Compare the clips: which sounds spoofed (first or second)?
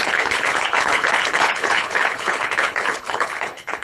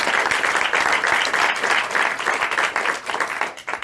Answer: first